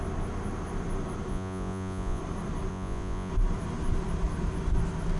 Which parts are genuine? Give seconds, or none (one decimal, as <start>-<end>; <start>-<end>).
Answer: 0.0-1.3; 2.2-2.7; 3.3-5.2